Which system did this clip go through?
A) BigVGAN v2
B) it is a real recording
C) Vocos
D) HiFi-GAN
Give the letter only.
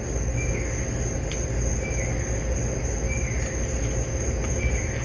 B